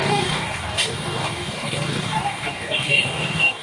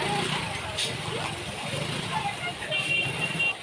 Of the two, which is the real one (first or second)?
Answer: second